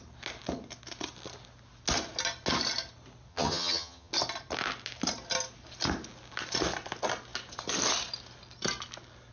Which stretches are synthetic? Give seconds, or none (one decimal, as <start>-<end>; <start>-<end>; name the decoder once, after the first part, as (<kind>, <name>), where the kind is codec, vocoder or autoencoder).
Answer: 3.3-4.1 (vocoder, HiFi-GAN)